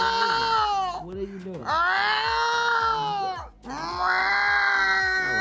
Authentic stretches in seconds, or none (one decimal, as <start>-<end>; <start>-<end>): 0.0-5.4